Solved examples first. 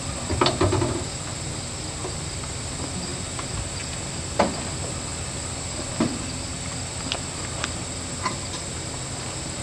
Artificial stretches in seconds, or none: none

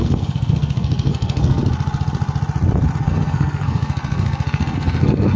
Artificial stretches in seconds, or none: 0.0-1.6 (codec, SNAC); 3.0-5.4

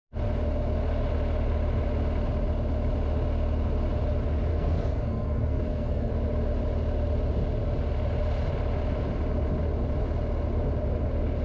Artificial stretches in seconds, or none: 4.5-6.1 (codec, SNAC)

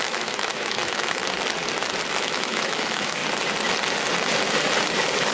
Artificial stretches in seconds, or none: 0.0-1.2 (autoencoder, DAC-VAE); 2.2-3.2

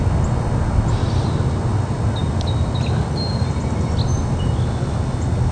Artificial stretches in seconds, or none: none

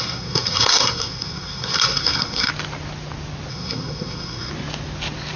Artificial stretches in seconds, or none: 0.0-2.5 (codec, SNAC); 3.5-4.5